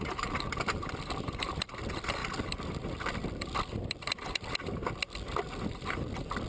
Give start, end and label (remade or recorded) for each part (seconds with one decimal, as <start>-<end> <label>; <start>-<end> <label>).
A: 0.0-6.5 recorded